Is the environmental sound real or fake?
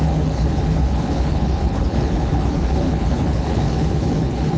fake